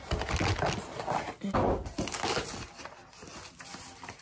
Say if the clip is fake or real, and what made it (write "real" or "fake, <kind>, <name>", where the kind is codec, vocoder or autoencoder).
real